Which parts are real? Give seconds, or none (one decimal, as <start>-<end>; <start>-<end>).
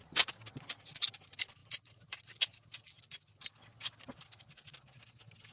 0.0-5.5